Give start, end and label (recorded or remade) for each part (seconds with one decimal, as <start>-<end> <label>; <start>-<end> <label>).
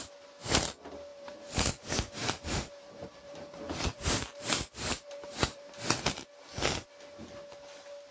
0.0-1.1 recorded; 1.1-1.7 remade; 1.7-2.2 recorded; 2.2-5.7 remade; 5.7-8.1 recorded